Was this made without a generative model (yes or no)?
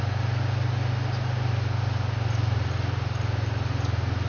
yes